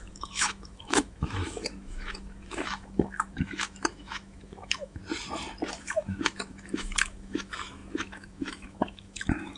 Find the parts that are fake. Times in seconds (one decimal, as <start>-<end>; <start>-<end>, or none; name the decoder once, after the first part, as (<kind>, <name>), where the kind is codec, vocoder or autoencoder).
0.0-5.0 (autoencoder, DAC-VAE); 5.8-9.6